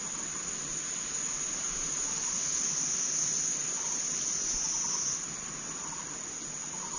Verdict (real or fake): real